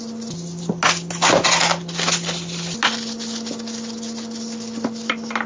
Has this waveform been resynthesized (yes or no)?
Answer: no